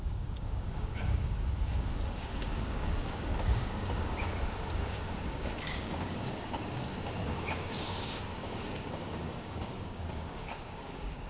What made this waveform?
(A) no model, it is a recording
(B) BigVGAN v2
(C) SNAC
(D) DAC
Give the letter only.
D